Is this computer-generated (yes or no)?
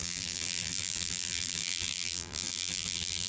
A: yes